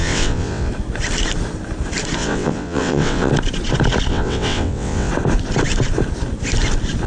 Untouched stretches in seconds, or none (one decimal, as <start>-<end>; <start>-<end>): 0.7-2.2; 3.3-4.1; 5.1-7.1